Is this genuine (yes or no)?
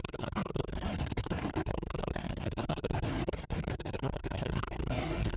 no